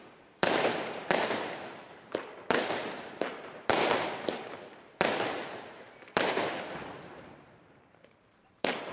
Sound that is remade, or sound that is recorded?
remade